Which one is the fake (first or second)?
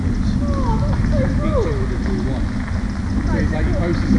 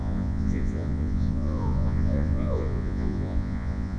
second